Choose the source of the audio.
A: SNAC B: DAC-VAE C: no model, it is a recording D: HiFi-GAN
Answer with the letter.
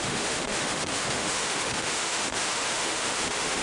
B